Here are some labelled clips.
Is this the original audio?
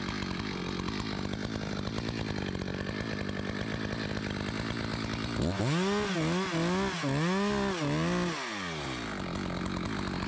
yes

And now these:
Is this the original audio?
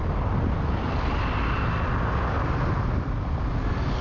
yes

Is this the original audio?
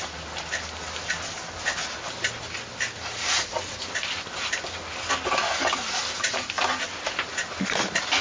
yes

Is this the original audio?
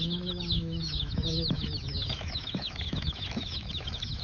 no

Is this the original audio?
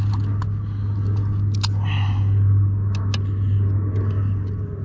yes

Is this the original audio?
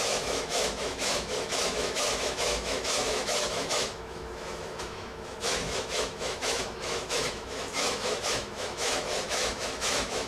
no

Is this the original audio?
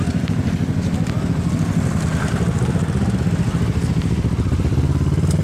yes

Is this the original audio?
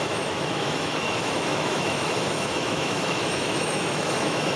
no